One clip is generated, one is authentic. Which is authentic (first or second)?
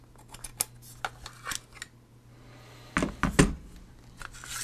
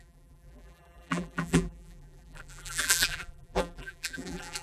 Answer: first